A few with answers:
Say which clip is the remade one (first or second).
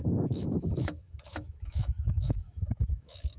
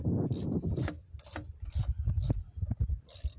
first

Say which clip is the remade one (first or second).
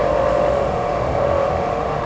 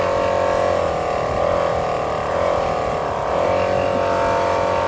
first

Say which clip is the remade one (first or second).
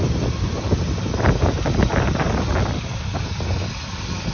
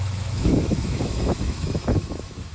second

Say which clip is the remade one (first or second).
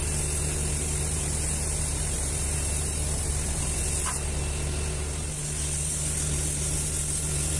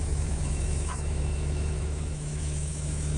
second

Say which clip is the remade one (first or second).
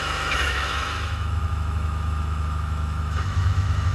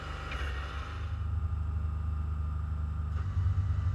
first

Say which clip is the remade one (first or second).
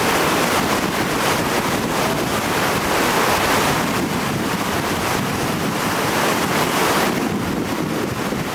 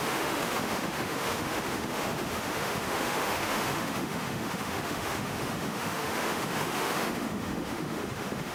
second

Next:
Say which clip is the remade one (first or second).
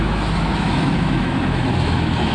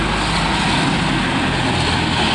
first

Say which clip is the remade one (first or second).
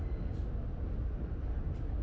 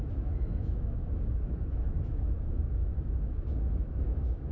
second